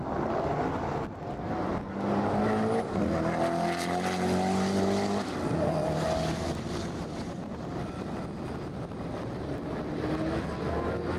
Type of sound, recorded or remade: recorded